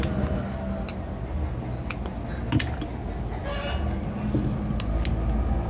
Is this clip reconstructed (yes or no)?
no